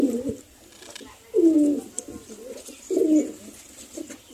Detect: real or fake real